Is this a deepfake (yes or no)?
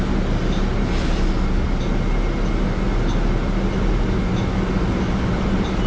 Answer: no